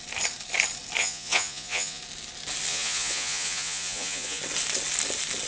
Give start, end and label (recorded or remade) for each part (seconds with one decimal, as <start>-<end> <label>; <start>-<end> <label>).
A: 0.0-1.0 recorded; 1.0-2.0 remade; 2.0-2.7 recorded; 2.7-4.4 remade; 4.4-5.5 recorded